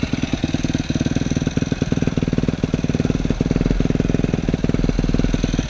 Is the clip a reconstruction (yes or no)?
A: no